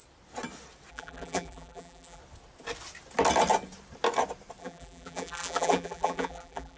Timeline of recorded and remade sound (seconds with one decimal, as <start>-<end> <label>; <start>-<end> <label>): 0.0-0.9 recorded; 0.9-2.2 remade; 2.2-4.6 recorded; 4.6-6.8 remade